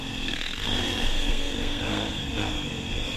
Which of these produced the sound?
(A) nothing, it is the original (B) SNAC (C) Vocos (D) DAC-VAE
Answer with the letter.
B